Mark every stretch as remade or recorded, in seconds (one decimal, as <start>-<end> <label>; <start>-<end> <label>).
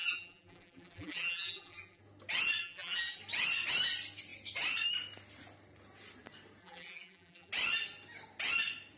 0.0-2.0 remade; 2.0-2.6 recorded; 2.6-3.2 remade; 3.2-6.6 recorded; 6.6-7.5 remade; 7.5-9.0 recorded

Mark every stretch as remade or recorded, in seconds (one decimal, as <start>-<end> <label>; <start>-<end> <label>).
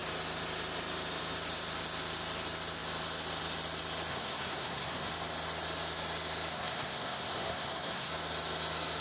0.0-4.1 recorded; 4.1-5.1 remade; 5.1-6.5 recorded; 6.5-8.1 remade; 8.1-9.0 recorded